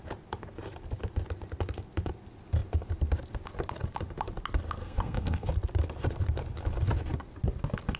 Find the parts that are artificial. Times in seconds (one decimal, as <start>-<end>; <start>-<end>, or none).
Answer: 4.8-5.5